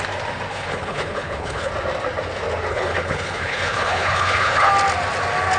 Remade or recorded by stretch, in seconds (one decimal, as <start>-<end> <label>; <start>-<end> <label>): 0.0-0.5 recorded; 0.5-1.7 remade; 1.7-2.7 recorded; 2.7-4.7 remade; 4.7-5.6 recorded